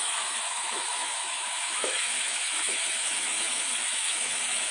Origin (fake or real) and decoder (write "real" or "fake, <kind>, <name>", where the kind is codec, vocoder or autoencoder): fake, autoencoder, DAC-VAE